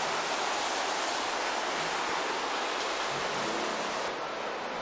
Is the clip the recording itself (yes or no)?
yes